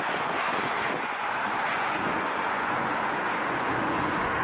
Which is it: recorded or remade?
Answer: remade